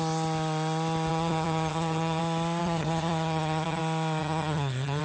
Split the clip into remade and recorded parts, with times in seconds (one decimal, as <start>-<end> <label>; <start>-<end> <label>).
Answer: 0.0-1.1 recorded; 1.1-2.2 remade; 2.2-2.6 recorded; 2.6-3.8 remade; 3.8-4.2 recorded; 4.2-5.0 remade